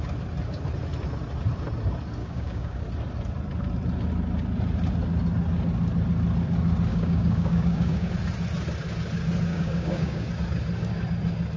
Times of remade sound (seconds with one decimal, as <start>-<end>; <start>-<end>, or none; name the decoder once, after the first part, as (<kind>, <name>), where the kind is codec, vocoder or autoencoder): 2.2-2.8 (codec, DAC); 6.9-8.1; 9.5-10.3